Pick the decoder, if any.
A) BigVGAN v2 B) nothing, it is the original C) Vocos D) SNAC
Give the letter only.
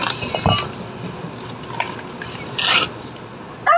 B